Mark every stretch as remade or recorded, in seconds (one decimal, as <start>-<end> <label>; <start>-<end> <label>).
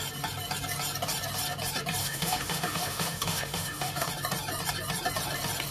0.0-2.0 recorded; 2.0-4.1 remade; 4.1-5.7 recorded